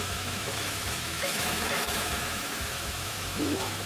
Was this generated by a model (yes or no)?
yes